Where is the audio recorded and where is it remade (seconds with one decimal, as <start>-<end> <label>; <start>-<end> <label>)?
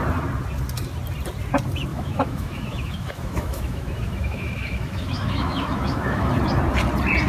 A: 0.0-1.9 recorded; 1.9-6.3 remade; 6.3-7.3 recorded